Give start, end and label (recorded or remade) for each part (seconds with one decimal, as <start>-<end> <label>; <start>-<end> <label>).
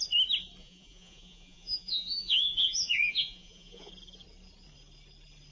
0.0-0.6 recorded; 0.6-3.9 remade; 3.9-5.5 recorded